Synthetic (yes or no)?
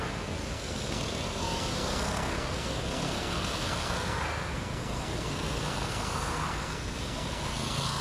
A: yes